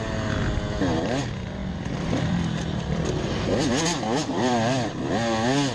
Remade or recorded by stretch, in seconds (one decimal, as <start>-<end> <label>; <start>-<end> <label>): 0.0-1.6 recorded; 1.6-3.7 remade; 3.7-4.3 recorded; 4.3-4.9 remade; 4.9-5.7 recorded